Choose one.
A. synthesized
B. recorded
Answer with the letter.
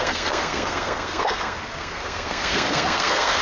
A